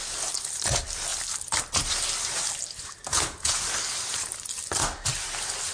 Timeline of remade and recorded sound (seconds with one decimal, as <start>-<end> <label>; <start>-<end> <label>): 0.0-3.1 recorded; 3.1-3.7 remade; 3.7-5.7 recorded